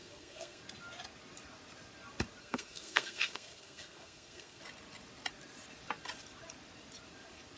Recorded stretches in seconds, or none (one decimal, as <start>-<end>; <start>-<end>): 0.6-2.4; 4.6-7.6